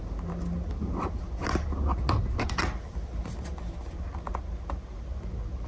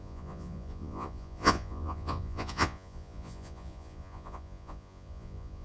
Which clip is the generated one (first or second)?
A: second